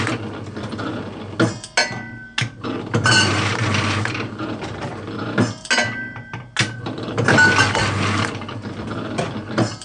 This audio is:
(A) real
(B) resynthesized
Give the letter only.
A